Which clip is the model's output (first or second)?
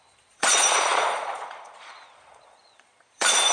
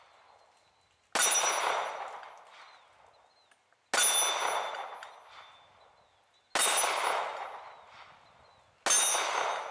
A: first